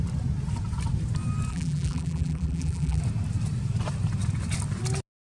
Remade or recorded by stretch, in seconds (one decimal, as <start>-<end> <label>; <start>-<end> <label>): 0.0-1.5 recorded; 1.5-3.0 remade; 3.0-5.3 recorded